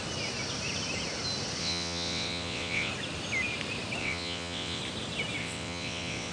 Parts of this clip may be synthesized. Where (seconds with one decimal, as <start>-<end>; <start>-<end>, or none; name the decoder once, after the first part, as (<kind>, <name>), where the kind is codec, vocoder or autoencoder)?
1.6-2.9 (vocoder, WaveNeXt); 4.0-4.8; 5.4-6.3